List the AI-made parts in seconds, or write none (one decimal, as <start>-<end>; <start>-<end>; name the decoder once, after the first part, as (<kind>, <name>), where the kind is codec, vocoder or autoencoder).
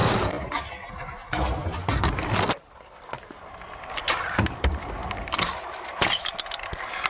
0.0-1.3 (vocoder, BigVGAN v2); 5.0-6.2